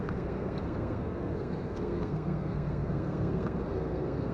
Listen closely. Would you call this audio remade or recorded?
remade